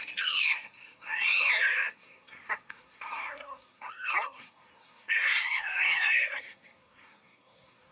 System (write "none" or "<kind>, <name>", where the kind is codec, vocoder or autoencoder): codec, SNAC